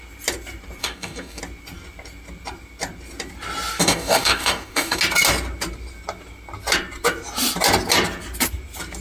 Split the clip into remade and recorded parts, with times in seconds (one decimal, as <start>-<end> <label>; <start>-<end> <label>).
0.0-0.8 recorded; 0.8-1.4 remade; 1.4-3.8 recorded; 3.8-5.0 remade; 5.0-9.0 recorded